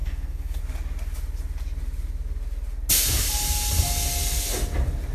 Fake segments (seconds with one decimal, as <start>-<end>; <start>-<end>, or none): 0.0-0.6